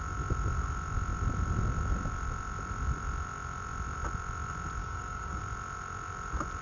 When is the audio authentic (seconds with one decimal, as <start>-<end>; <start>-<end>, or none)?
0.0-4.8; 5.4-6.6